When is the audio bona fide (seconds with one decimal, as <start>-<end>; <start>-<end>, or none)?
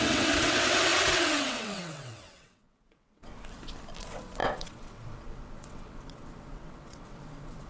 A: 3.3-4.0